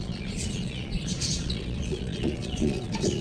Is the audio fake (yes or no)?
yes